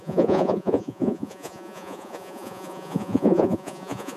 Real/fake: fake